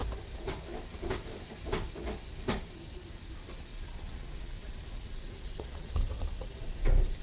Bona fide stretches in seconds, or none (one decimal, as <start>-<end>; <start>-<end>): 0.0-3.7; 6.5-7.2